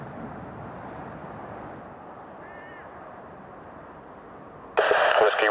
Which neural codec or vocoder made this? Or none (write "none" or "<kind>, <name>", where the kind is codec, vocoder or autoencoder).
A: none